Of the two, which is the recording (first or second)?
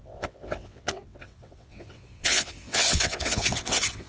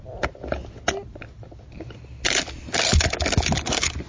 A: second